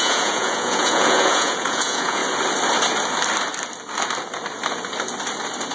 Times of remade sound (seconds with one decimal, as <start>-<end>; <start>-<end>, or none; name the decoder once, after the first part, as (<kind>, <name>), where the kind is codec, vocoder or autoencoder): 0.0-2.2 (vocoder, Vocos)